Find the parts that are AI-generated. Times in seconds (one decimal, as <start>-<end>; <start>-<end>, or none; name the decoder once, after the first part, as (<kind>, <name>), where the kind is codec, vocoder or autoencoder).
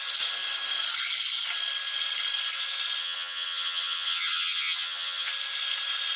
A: 3.0-5.3 (vocoder, HiFi-GAN)